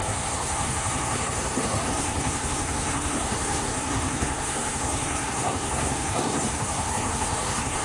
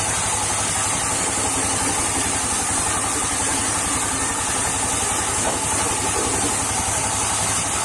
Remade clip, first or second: first